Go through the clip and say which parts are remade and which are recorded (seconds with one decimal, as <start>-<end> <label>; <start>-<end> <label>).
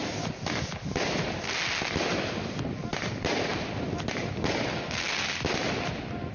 0.0-6.3 recorded